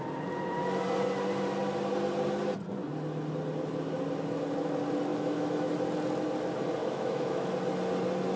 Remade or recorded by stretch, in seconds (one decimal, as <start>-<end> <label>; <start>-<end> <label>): 0.0-5.1 recorded; 5.1-5.7 remade; 5.7-6.8 recorded; 6.8-7.5 remade; 7.5-8.4 recorded